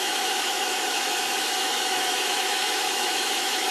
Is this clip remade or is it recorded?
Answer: remade